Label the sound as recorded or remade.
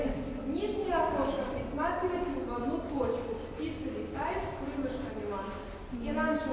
recorded